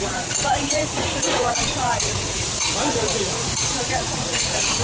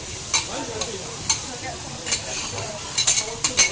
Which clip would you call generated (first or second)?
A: first